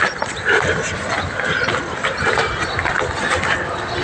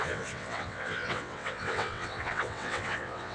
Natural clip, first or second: first